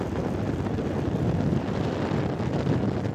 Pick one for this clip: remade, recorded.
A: recorded